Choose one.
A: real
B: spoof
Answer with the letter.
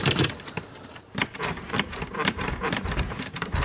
B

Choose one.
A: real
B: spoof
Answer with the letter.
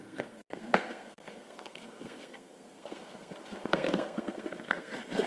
B